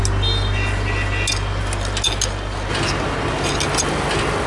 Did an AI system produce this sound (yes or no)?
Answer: no